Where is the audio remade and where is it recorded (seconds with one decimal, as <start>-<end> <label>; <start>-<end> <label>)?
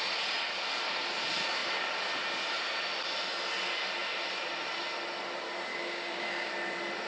0.0-5.7 recorded; 5.7-6.5 remade; 6.5-7.1 recorded